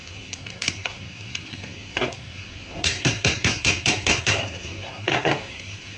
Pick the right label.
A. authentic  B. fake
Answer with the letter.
B